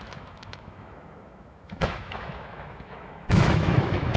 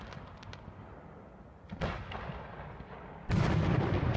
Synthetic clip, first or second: first